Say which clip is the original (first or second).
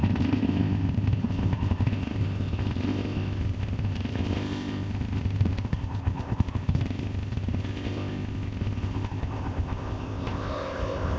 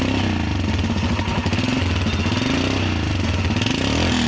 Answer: second